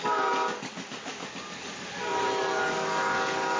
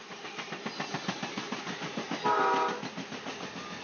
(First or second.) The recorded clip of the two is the second